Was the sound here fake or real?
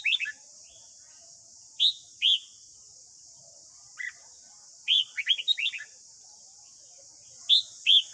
real